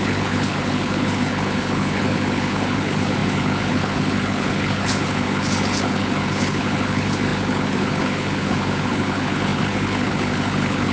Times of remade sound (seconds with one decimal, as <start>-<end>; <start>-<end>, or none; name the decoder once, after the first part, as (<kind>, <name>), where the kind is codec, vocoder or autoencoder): 0.0-10.9 (codec, HILCodec)